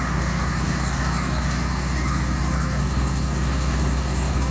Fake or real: fake